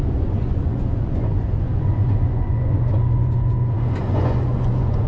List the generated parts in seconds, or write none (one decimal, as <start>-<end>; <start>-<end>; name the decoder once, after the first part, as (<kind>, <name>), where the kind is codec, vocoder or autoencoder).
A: 0.0-5.1 (vocoder, Vocos)